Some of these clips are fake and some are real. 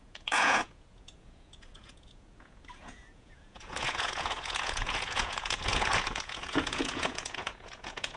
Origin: fake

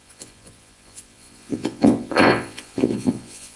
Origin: fake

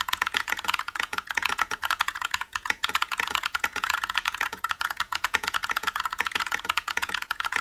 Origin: fake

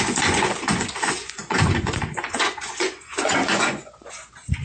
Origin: fake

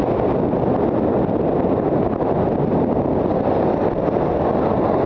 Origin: real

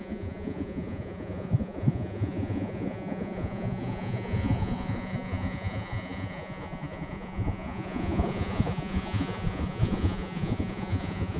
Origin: fake